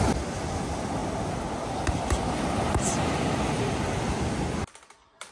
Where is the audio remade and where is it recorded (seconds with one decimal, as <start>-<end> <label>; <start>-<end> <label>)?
0.0-5.3 recorded